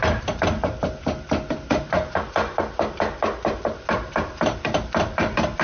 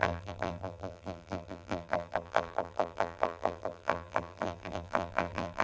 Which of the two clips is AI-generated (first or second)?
second